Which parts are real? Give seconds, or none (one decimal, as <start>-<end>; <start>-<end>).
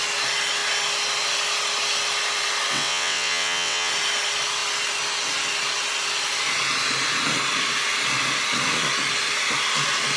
0.0-2.7; 3.9-10.2